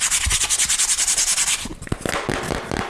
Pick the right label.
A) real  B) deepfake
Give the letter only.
A